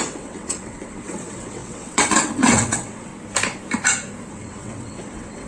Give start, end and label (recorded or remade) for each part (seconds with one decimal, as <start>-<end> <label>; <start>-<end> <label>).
0.0-3.1 remade; 3.1-4.3 recorded; 4.3-5.5 remade